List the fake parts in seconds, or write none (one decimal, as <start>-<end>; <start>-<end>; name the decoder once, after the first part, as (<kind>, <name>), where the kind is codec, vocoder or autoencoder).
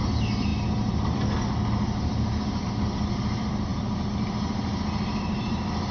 none